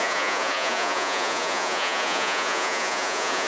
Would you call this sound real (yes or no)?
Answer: no